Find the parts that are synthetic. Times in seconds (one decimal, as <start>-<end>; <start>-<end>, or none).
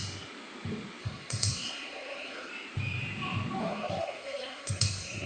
1.0-2.5; 3.6-5.3